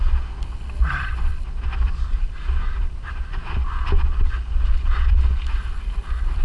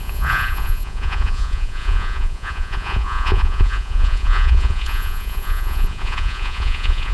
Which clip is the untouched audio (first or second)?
first